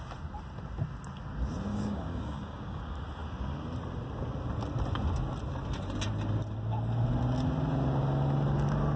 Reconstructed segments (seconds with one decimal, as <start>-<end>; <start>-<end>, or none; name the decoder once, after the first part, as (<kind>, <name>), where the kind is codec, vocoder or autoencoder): 1.7-2.8 (codec, DAC)